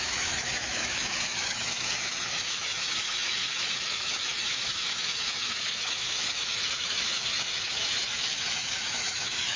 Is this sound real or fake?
fake